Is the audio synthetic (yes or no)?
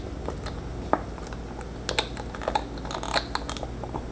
no